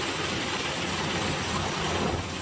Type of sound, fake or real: real